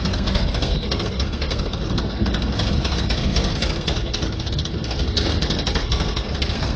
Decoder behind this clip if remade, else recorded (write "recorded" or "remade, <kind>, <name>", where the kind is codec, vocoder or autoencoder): remade, codec, SNAC